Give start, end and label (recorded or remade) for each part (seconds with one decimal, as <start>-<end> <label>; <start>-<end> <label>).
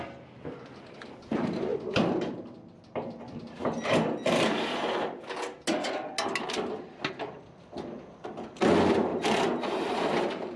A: 0.0-1.7 recorded; 1.7-2.5 remade; 2.5-4.2 recorded; 4.2-4.7 remade; 4.7-9.1 recorded; 9.1-10.6 remade